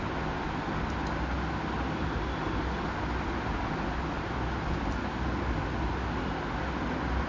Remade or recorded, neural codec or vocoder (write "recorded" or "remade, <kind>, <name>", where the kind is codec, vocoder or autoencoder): recorded